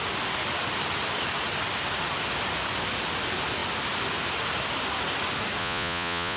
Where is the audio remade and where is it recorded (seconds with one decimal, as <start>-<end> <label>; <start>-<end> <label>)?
0.0-5.6 recorded; 5.6-6.4 remade